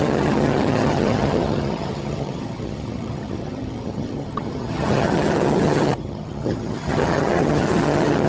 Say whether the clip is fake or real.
fake